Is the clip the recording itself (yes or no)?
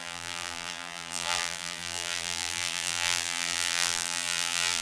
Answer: no